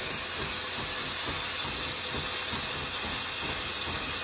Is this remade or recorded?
recorded